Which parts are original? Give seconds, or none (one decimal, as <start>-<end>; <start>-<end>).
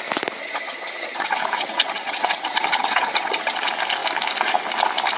0.0-0.4; 3.5-5.2